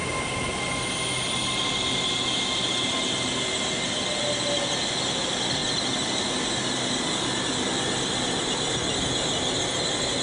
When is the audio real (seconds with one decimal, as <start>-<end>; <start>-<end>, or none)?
0.0-10.2